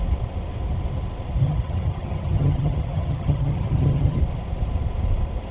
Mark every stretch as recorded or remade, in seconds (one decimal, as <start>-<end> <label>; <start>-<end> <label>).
0.0-1.4 recorded; 1.4-4.2 remade; 4.2-5.5 recorded